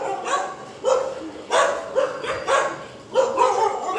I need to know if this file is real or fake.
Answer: real